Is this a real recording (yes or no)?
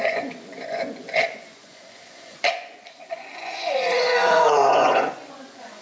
no